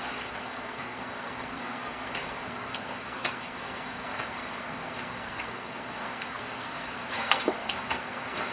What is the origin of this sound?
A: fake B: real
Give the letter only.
A